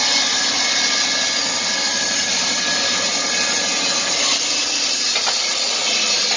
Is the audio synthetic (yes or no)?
no